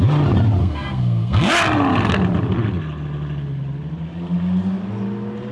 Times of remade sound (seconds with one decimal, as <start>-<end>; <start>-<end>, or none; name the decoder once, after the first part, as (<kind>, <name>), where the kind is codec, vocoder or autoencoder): 0.6-1.5 (codec, SNAC)